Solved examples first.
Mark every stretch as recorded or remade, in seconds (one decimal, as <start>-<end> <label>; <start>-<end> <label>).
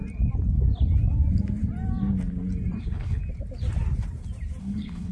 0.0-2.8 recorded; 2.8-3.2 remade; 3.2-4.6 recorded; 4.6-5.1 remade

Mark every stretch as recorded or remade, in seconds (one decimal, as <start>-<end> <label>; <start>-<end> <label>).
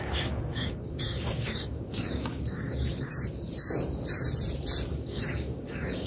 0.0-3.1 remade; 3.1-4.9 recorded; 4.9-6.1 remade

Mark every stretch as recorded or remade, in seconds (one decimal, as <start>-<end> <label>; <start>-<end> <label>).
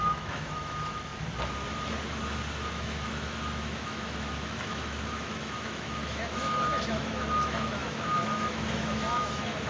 0.0-1.1 remade; 1.1-2.7 recorded; 2.7-9.7 remade